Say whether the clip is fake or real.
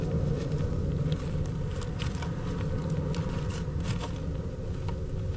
real